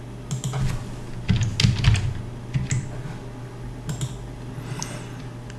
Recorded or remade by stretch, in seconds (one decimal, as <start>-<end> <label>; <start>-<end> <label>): 0.0-5.6 recorded